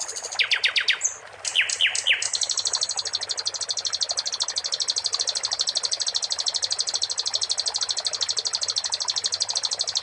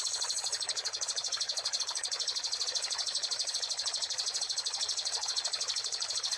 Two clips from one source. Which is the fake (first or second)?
second